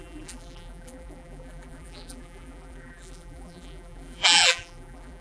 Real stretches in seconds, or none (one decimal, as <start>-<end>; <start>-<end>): none